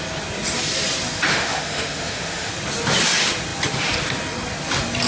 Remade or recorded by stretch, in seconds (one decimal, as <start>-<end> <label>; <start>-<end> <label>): 0.0-1.3 recorded; 1.3-2.5 remade; 2.5-5.1 recorded